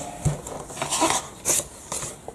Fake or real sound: real